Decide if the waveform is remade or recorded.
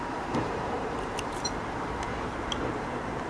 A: remade